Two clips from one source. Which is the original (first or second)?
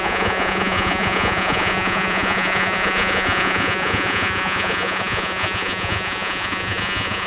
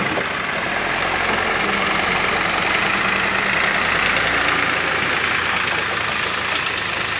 second